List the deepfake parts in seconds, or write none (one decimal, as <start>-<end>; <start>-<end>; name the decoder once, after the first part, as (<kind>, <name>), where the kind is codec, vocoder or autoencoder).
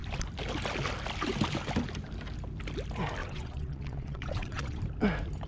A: 3.2-4.8 (vocoder, WaveNeXt)